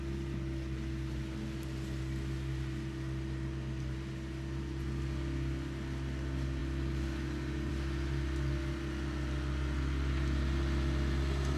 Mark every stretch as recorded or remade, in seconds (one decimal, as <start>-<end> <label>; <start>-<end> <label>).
0.0-11.6 recorded